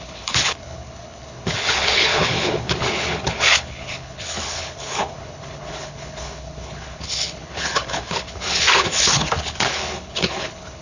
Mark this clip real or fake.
fake